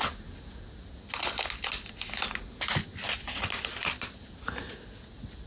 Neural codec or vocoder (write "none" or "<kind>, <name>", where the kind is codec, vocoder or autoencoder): none